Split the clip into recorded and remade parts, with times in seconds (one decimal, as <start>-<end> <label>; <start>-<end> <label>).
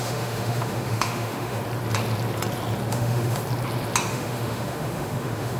0.0-1.6 remade; 1.6-2.9 recorded; 2.9-3.4 remade; 3.4-4.1 recorded; 4.1-5.6 remade